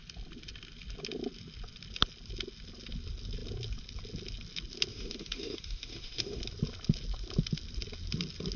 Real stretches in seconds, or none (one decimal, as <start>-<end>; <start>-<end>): 0.0-4.9; 6.4-8.6